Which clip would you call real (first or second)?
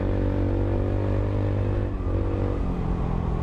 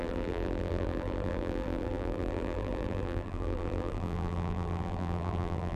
first